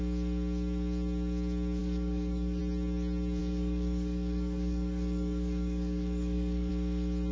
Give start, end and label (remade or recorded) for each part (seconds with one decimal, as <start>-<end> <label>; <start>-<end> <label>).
0.0-1.8 recorded; 1.8-2.6 remade; 2.6-3.4 recorded; 3.4-6.7 remade; 6.7-7.3 recorded